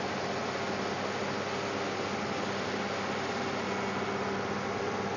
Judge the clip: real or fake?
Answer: real